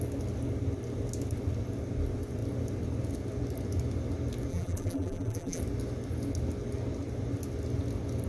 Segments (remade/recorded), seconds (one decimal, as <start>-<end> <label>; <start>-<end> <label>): 0.0-4.5 recorded; 4.5-5.6 remade; 5.6-8.3 recorded